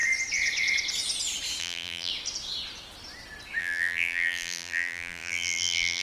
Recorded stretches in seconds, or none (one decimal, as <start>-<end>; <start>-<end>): 0.0-1.6; 2.1-3.6